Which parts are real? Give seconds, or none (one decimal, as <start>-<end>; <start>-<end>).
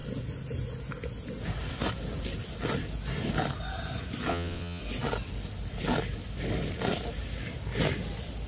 0.0-4.3; 4.8-8.5